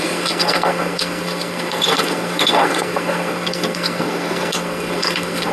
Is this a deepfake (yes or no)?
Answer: yes